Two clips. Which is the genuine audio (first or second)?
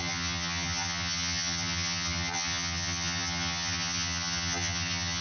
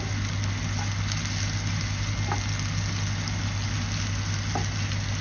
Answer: second